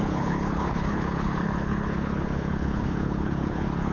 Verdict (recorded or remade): remade